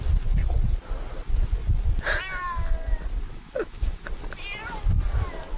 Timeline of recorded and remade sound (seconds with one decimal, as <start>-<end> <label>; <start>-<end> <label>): 0.0-3.3 recorded; 3.3-4.0 remade; 4.0-5.6 recorded